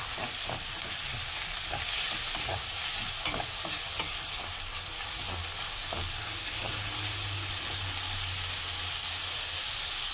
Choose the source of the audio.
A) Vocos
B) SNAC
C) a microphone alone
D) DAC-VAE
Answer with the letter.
C